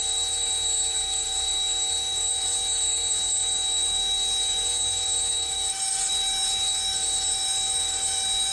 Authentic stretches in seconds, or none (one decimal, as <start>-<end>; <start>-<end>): none